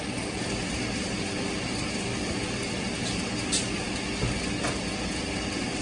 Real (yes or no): yes